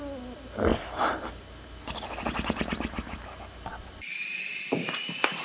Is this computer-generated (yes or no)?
no